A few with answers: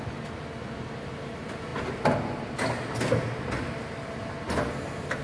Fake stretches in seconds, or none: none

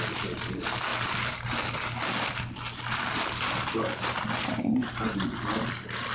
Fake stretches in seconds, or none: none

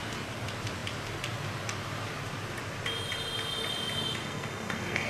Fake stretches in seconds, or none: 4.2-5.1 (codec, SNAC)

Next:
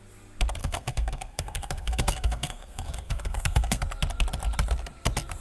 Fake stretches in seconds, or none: 0.6-3.8 (codec, SNAC)

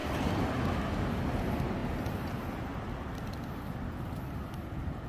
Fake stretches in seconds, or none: none